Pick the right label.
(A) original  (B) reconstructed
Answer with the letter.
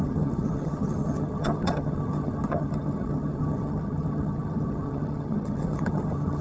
B